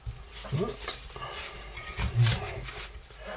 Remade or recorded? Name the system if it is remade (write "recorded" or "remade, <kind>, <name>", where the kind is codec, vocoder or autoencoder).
recorded